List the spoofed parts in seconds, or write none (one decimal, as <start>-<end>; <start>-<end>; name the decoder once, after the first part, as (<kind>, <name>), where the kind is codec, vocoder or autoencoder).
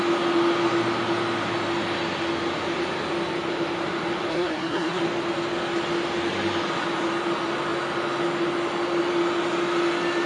4.3-5.0 (codec, SNAC)